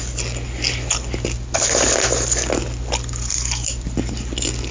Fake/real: real